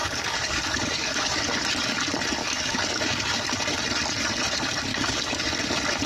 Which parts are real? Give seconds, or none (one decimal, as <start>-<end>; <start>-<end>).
1.4-2.4; 3.5-4.9; 5.4-6.1